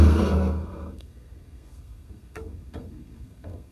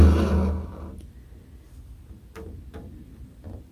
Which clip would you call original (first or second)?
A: second